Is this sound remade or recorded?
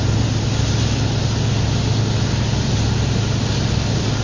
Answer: recorded